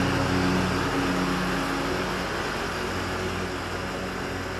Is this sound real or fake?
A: real